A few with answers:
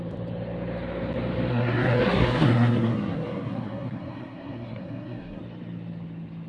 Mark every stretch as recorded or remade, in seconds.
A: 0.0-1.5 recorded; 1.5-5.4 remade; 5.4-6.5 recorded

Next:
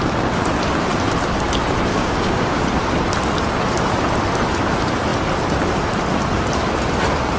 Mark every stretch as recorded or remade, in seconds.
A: 0.0-1.9 recorded; 1.9-2.6 remade; 2.6-7.4 recorded

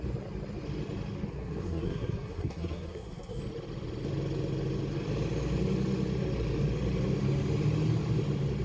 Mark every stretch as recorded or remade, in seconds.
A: 0.0-1.3 recorded; 1.3-3.4 remade; 3.4-8.6 recorded

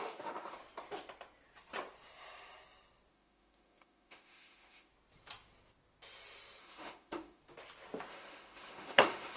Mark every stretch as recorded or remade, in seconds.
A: 0.0-0.6 remade; 0.6-3.1 recorded; 3.1-4.9 remade; 4.9-6.6 recorded; 6.6-7.4 remade; 7.4-8.1 recorded; 8.1-9.4 remade

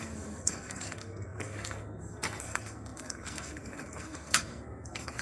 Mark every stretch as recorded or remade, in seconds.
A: 0.0-5.2 remade

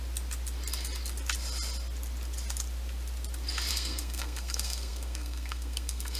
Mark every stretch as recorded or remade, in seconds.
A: 0.0-3.7 recorded; 3.7-6.2 remade

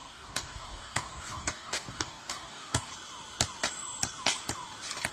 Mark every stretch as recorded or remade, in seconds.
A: 0.0-2.9 remade; 2.9-5.1 recorded